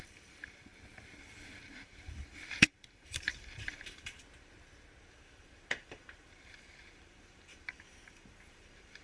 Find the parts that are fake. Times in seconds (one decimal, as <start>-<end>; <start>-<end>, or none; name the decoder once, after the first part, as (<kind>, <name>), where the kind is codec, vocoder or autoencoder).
0.0-0.7 (vocoder, BigVGAN v2); 1.2-4.2; 5.1-9.0

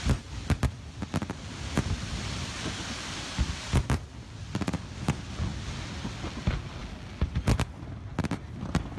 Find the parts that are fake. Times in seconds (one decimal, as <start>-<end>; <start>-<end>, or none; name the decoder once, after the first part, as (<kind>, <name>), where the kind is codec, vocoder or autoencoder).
none

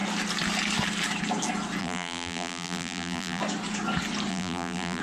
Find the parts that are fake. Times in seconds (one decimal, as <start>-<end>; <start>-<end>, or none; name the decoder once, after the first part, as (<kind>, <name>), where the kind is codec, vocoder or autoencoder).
1.8-3.4 (vocoder, BigVGAN v2); 4.3-5.0

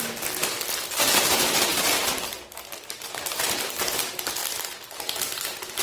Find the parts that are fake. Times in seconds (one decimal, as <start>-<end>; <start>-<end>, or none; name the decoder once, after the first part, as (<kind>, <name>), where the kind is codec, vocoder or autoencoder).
1.7-3.5 (vocoder, BigVGAN v2)

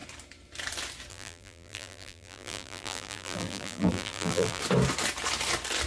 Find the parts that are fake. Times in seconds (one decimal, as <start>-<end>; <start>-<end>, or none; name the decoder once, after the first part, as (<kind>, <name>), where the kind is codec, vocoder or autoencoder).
1.1-4.6 (vocoder, BigVGAN v2)

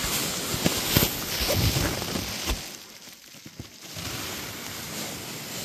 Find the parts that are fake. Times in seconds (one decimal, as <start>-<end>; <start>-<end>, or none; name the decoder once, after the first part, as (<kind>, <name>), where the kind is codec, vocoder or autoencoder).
none

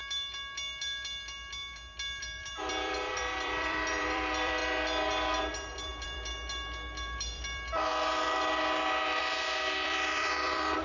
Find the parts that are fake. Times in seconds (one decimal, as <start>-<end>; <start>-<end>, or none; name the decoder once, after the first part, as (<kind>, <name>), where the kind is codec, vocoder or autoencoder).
2.2-4.6 (vocoder, BigVGAN v2); 5.4-7.9; 9.2-10.8